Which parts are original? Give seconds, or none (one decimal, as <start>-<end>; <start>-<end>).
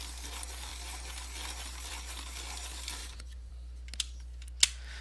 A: 0.0-3.0; 3.5-5.0